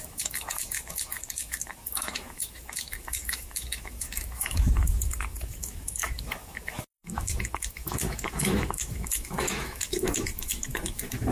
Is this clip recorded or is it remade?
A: remade